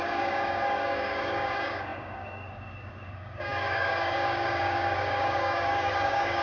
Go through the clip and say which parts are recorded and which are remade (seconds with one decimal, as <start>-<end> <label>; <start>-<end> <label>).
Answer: 0.0-6.4 remade